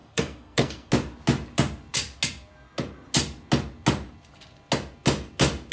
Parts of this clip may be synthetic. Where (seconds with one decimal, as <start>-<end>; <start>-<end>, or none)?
0.0-0.9